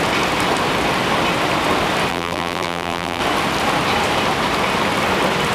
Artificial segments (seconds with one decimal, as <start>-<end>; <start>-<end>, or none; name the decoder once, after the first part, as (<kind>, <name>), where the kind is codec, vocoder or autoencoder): 2.1-3.2 (vocoder, BigVGAN v2)